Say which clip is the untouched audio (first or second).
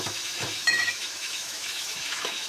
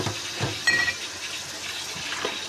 second